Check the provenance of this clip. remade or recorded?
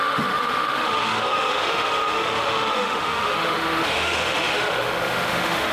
remade